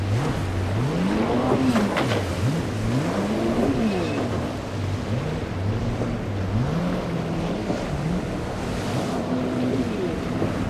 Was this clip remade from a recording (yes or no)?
no